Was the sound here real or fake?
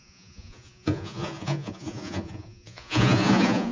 fake